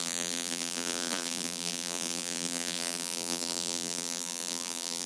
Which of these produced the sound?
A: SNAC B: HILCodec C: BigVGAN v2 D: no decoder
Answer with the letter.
C